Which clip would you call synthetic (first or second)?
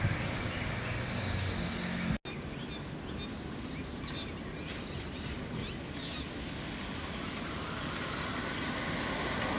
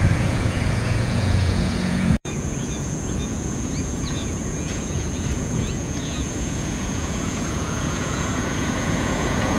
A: second